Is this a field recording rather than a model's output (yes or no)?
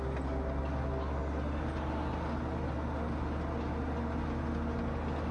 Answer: yes